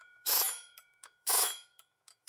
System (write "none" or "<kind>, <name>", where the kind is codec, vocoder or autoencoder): autoencoder, DAC-VAE